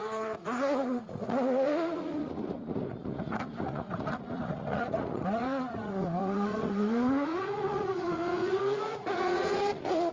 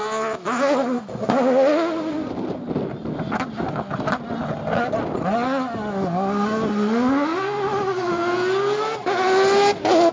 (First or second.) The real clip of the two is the second